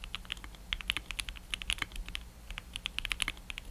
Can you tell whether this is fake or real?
real